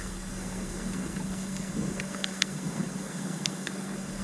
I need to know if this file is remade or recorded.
remade